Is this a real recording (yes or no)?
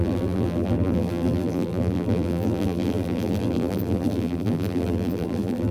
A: no